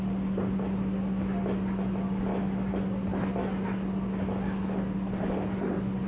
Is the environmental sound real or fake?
real